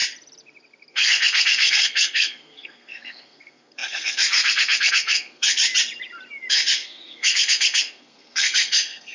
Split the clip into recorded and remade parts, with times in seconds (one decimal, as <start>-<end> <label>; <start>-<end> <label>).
0.0-0.9 recorded; 0.9-5.6 remade; 5.6-6.5 recorded; 6.5-9.1 remade